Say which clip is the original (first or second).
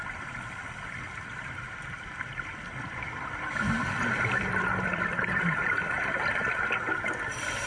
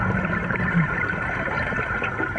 first